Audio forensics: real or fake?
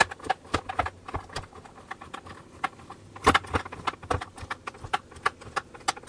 real